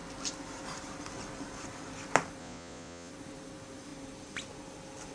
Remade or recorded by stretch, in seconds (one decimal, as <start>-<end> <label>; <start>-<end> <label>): 0.0-2.4 recorded; 2.4-3.1 remade; 3.1-5.1 recorded